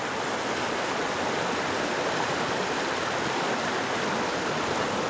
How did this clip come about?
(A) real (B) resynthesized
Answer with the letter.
A